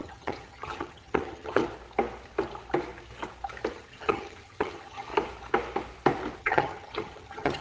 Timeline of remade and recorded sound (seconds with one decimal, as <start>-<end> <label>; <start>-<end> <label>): 0.0-1.6 remade; 1.6-3.7 recorded; 3.7-5.1 remade; 5.1-6.4 recorded; 6.4-7.6 remade